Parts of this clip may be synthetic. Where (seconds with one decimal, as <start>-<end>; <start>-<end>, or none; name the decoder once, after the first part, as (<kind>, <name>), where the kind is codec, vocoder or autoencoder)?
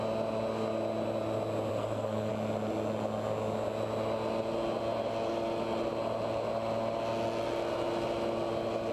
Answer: 1.7-2.3 (codec, SNAC)